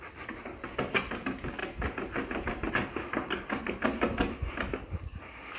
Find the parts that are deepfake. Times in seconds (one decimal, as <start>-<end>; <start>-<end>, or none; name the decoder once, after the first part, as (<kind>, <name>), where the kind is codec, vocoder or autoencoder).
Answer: 1.6-2.7 (vocoder, BigVGAN v2)